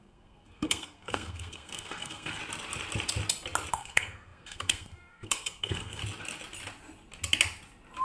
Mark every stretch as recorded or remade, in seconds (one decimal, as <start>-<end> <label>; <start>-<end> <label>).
0.0-2.4 remade; 2.4-3.7 recorded; 3.7-6.0 remade; 6.0-8.0 recorded